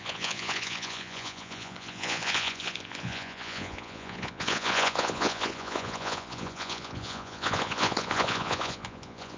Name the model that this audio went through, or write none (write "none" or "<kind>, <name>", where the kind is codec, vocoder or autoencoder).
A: vocoder, Vocos